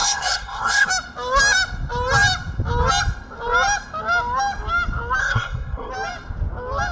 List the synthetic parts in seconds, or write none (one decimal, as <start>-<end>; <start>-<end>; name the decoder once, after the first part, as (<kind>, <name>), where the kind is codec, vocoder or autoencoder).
0.0-0.9 (codec, SNAC); 5.2-5.9